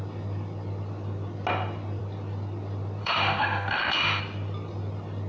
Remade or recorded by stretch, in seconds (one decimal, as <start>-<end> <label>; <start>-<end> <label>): 0.0-3.0 recorded; 3.0-4.2 remade; 4.2-5.3 recorded